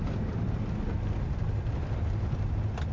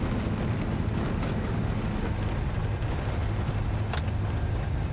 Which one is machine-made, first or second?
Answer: first